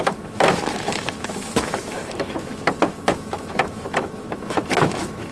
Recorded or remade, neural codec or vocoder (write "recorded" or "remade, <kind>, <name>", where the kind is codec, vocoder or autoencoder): remade, autoencoder, DAC-VAE